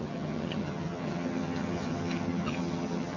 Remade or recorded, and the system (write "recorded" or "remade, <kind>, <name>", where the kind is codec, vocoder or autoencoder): remade, vocoder, HiFi-GAN